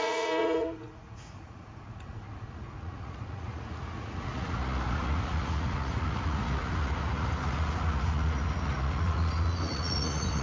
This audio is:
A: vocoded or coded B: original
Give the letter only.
A